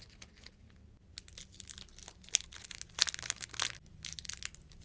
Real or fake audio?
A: real